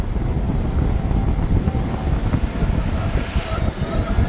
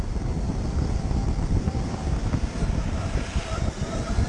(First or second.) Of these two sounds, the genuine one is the first